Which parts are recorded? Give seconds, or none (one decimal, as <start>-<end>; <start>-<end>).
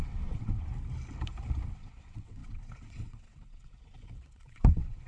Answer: 0.7-1.6